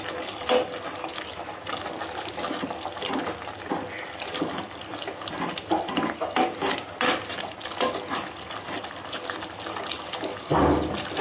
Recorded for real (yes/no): yes